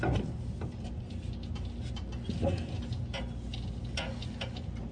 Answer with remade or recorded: recorded